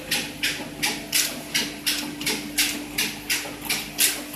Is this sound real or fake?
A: real